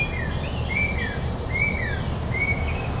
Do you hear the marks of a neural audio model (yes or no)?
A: no